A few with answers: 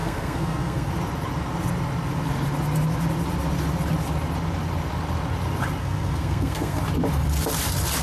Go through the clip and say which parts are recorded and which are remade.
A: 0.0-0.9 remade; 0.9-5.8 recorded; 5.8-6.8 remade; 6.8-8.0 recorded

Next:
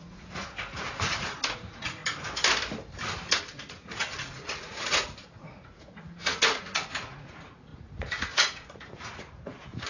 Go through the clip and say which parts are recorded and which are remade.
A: 0.0-2.0 remade; 2.0-3.7 recorded; 3.7-9.9 remade

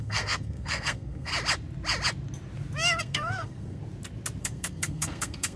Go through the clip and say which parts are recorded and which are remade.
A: 0.0-1.3 remade; 1.3-3.0 recorded; 3.0-3.8 remade; 3.8-4.4 recorded; 4.4-5.6 remade

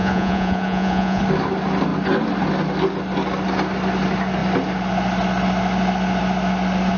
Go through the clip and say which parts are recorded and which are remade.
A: 0.0-1.2 remade; 1.2-7.0 recorded

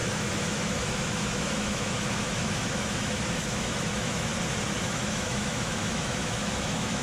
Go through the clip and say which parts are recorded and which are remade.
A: 0.0-4.3 remade; 4.3-4.8 recorded; 4.8-7.0 remade